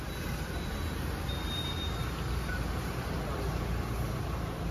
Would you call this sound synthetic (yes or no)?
yes